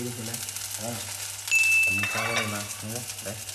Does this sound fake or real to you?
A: real